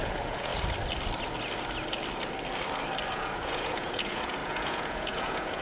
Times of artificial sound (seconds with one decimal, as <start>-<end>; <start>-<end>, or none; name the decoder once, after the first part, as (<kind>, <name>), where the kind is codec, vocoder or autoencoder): 0.0-0.5 (vocoder, Vocos); 3.1-5.6